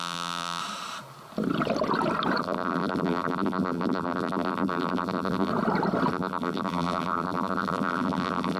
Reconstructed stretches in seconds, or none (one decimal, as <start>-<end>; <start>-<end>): 0.0-0.6; 2.4-5.5; 6.1-8.6